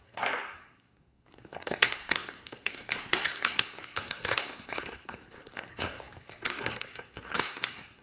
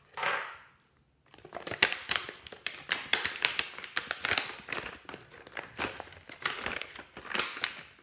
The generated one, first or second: first